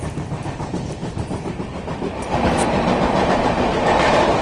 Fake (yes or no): yes